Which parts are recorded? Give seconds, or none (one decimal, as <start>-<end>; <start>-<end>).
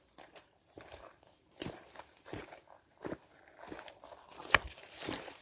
3.0-4.4